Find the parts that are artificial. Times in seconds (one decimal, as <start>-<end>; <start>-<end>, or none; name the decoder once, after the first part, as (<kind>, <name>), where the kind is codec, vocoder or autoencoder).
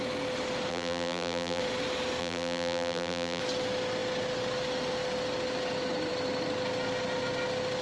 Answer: 0.7-1.6 (vocoder, BigVGAN v2); 2.2-3.4